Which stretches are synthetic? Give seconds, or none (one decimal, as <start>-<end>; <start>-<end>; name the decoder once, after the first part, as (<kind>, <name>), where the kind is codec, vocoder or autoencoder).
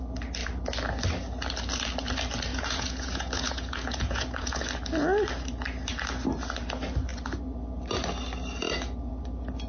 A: 2.5-4.6 (vocoder, Vocos)